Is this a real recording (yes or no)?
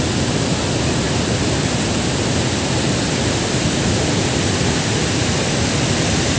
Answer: no